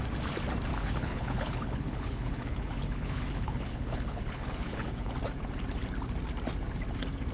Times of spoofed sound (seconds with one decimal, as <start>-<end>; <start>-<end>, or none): 0.7-5.1